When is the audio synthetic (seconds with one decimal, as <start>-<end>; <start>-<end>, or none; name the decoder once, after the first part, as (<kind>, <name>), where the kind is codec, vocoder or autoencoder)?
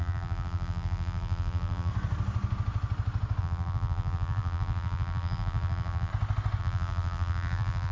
0.0-1.9 (vocoder, BigVGAN v2); 3.4-6.1; 6.6-7.9